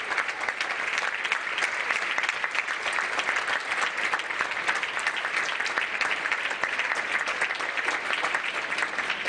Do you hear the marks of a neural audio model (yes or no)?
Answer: no